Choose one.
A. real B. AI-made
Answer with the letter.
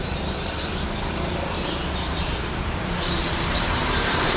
B